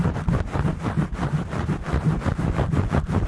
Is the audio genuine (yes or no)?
yes